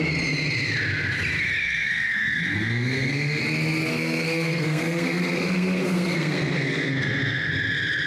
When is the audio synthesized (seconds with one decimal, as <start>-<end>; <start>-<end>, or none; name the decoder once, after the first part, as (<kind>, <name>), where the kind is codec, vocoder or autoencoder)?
1.6-3.4 (codec, SNAC); 3.9-7.5